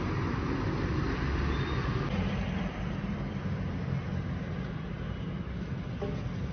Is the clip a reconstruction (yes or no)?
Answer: no